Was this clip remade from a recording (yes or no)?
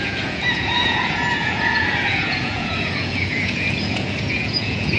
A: yes